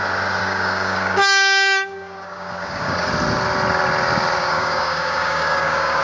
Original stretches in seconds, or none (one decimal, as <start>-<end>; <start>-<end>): 0.0-0.4; 3.1-4.4